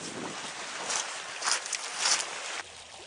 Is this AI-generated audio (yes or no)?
no